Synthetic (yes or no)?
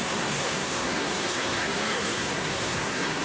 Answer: yes